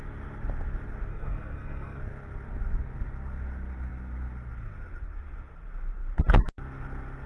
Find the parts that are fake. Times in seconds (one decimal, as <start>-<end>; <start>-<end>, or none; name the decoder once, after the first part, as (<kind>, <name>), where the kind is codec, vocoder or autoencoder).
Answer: 1.1-2.0 (codec, SNAC)

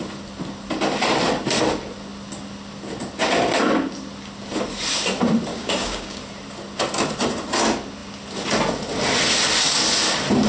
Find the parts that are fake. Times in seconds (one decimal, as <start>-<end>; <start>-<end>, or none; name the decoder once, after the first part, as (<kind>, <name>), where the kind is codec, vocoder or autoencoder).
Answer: 5.5-6.2 (codec, DAC)

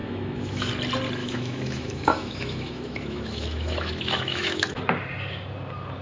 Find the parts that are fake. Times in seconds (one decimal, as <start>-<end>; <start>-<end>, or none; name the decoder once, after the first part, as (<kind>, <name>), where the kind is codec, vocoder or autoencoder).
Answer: 0.0-0.7 (autoencoder, DAC-VAE); 1.2-4.8